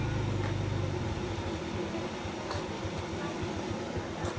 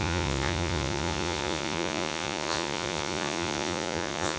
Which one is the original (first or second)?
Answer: first